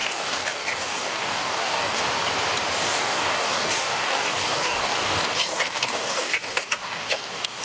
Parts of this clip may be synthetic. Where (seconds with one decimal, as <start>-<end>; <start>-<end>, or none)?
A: 0.0-2.0; 2.8-7.6